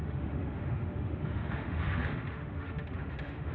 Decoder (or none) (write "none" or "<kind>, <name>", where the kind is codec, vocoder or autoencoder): autoencoder, DAC-VAE